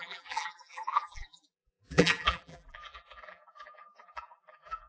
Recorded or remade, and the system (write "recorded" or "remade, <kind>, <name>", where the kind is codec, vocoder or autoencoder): remade, vocoder, BigVGAN v2